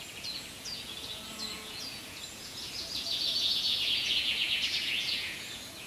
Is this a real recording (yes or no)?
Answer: no